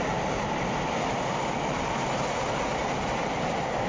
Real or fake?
real